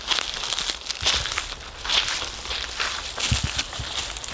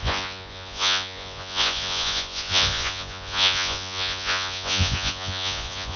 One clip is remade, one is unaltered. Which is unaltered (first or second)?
first